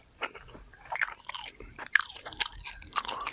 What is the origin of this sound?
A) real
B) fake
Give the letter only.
B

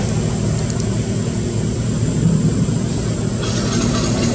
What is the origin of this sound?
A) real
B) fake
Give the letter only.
A